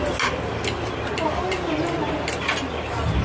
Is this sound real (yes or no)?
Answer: yes